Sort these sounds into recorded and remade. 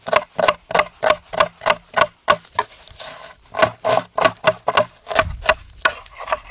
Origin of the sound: recorded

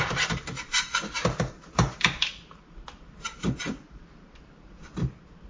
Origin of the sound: remade